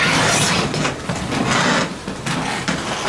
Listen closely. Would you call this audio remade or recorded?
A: recorded